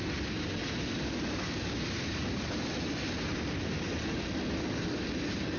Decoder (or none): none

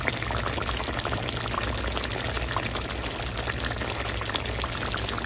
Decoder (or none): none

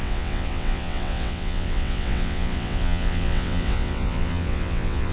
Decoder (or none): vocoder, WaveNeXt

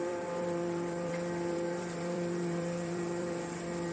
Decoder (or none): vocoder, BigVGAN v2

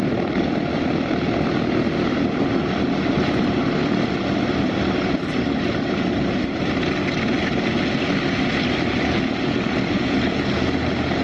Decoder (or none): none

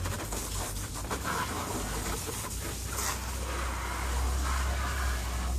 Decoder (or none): none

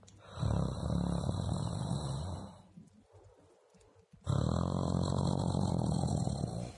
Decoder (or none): none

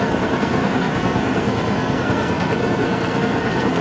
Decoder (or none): codec, SNAC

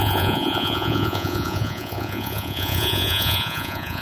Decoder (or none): vocoder, Vocos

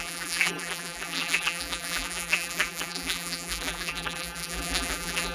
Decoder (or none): vocoder, BigVGAN v2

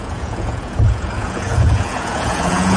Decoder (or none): vocoder, Vocos